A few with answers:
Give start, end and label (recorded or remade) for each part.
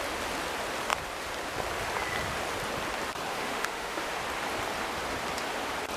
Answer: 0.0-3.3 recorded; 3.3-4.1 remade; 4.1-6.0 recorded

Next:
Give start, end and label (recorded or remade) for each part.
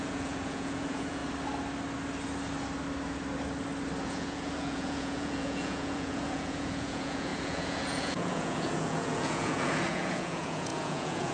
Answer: 0.0-1.2 remade; 1.2-4.0 recorded; 4.0-11.3 remade